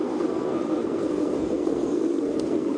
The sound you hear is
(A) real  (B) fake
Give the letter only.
B